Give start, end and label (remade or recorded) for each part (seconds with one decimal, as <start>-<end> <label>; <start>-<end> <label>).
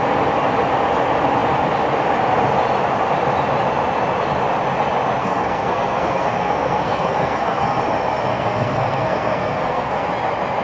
0.0-5.2 recorded; 5.2-7.8 remade; 7.8-8.3 recorded; 8.3-10.1 remade; 10.1-10.6 recorded